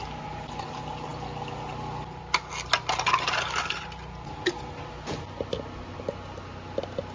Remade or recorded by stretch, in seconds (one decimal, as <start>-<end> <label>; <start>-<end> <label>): 0.0-7.1 recorded